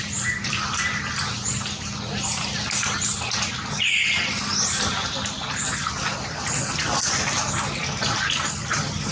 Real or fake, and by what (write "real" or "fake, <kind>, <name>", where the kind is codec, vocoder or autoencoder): real